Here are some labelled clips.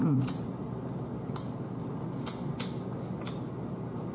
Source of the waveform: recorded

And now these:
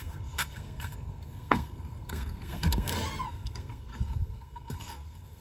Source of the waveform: remade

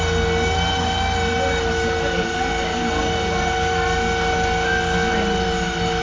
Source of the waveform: recorded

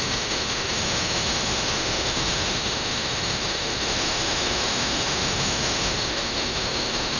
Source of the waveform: remade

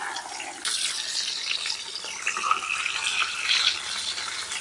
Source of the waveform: recorded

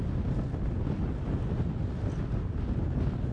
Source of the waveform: recorded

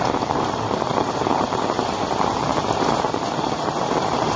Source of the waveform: remade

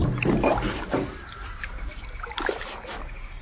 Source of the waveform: recorded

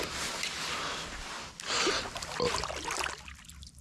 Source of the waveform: recorded